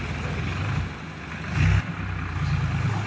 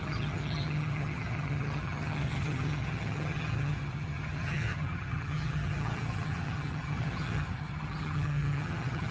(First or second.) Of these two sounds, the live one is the first